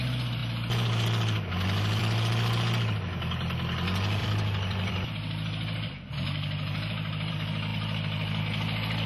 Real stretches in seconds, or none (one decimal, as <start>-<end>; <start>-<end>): 0.0-4.2; 7.3-9.1